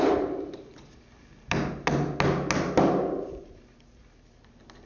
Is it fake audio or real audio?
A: real